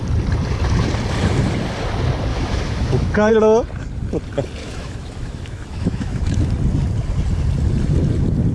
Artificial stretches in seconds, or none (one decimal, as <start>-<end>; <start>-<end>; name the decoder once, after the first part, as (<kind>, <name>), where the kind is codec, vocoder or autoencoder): 2.3-3.3 (autoencoder, DAC-VAE); 4.6-6.5